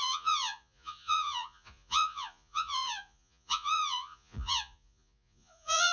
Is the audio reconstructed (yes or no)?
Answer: yes